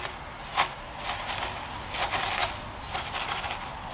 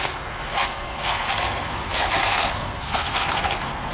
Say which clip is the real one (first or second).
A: first